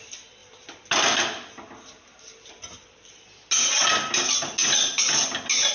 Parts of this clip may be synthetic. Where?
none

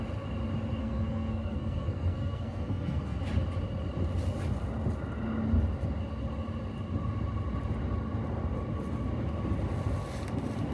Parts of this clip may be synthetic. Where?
0.8-3.2 (codec, SNAC)

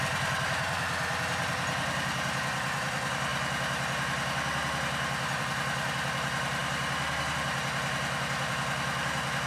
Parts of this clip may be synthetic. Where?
none

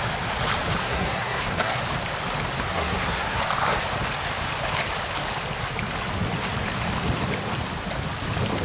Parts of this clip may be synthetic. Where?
0.8-1.8 (codec, SNAC); 2.7-3.4

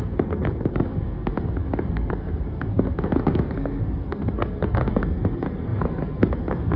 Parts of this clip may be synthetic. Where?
0.0-6.8 (codec, SNAC)

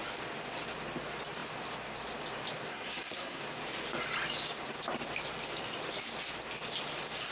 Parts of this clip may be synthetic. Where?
2.7-3.4 (codec, SNAC)

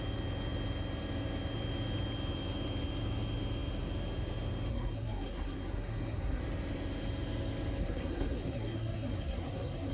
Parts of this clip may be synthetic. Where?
4.7-6.4 (codec, SNAC); 7.8-9.9